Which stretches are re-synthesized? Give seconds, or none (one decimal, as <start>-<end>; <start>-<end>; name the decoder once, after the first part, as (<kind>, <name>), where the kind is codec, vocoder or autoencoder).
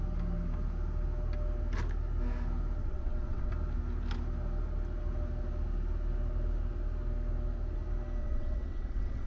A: 2.8-3.5 (vocoder, WaveNeXt); 8.2-9.3